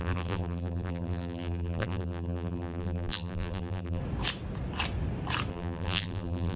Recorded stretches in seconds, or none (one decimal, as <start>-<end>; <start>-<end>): 4.0-5.5